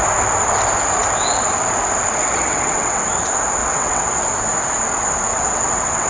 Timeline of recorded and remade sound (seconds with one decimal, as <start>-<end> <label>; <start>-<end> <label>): 0.0-2.2 recorded; 2.2-3.0 remade; 3.0-3.6 recorded; 3.6-4.2 remade; 4.2-5.3 recorded; 5.3-6.1 remade